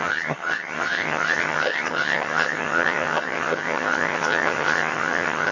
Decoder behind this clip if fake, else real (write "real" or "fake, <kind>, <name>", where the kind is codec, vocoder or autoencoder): fake, vocoder, HiFi-GAN